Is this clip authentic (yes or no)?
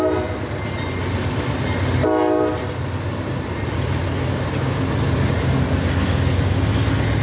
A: yes